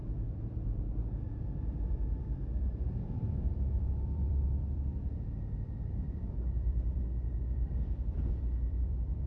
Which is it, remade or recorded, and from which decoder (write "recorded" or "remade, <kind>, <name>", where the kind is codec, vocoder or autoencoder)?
remade, vocoder, BigVGAN v2